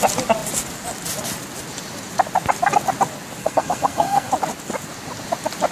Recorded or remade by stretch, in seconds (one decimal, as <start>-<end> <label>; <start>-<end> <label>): 0.0-3.4 recorded; 3.4-4.3 remade; 4.3-5.7 recorded